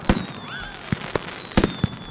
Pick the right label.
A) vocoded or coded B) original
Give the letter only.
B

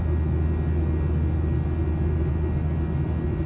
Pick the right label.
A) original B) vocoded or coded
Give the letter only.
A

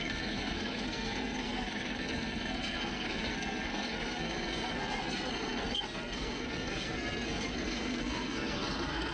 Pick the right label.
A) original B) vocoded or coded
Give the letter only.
B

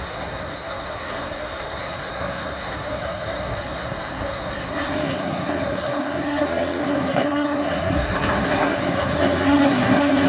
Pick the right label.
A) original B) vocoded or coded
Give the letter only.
B